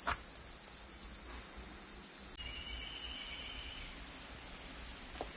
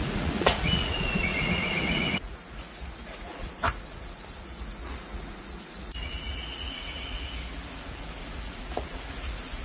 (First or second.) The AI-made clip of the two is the second